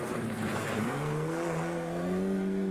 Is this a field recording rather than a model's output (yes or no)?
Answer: no